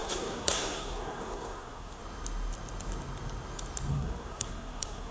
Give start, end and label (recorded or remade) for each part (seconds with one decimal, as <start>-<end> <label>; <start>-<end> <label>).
0.0-2.0 remade; 2.0-3.9 recorded; 3.9-5.1 remade